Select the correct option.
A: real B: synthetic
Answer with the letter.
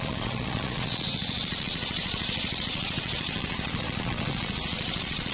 B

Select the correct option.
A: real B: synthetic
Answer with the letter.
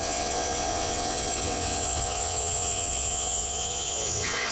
B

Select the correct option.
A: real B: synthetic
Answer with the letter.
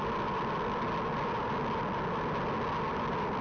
A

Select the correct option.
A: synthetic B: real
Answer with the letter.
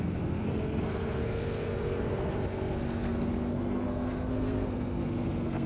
A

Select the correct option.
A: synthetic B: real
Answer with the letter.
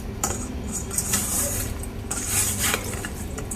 A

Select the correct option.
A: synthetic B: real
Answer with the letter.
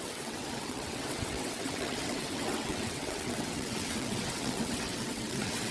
A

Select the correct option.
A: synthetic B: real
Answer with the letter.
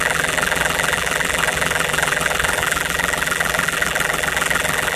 A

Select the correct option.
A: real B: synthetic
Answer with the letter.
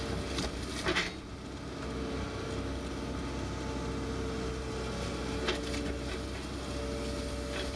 A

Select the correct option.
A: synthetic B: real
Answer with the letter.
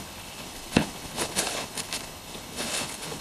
A